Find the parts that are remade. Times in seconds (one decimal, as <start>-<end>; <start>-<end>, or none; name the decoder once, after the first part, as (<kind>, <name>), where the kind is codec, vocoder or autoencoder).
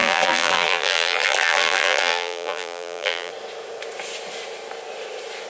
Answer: 0.0-3.3 (vocoder, BigVGAN v2)